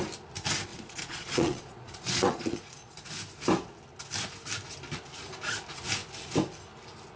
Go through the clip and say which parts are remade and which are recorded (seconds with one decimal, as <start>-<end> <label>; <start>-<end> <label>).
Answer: 0.0-0.7 recorded; 0.7-3.1 remade; 3.1-7.2 recorded